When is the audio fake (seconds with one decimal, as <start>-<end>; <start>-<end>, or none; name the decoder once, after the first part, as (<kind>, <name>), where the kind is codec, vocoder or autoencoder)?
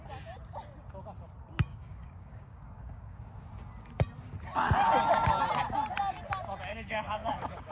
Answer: 1.7-3.2 (codec, DAC); 6.7-7.7